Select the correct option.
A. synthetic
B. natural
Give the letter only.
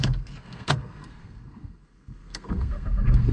A